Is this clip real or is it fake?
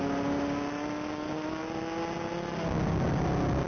real